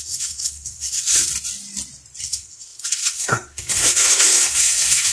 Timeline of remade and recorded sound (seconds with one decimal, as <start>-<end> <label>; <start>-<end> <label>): 0.0-1.3 remade; 1.3-2.2 recorded; 2.2-5.1 remade